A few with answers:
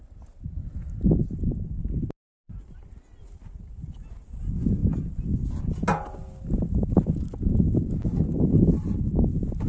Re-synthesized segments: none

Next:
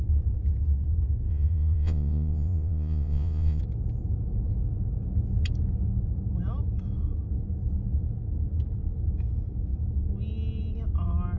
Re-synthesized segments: 1.3-3.6

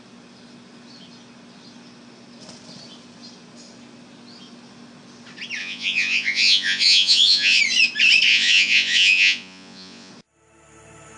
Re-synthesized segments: 5.6-7.6; 8.3-10.1

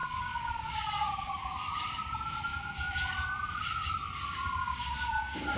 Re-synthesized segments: 0.0-1.4; 4.6-5.6

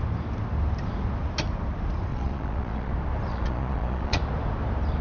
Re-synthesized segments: 2.1-2.9; 3.3-4.2